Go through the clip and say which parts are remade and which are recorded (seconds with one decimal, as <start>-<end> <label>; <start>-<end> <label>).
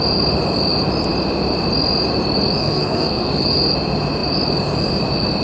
0.0-2.6 recorded; 2.6-3.3 remade; 3.3-5.4 recorded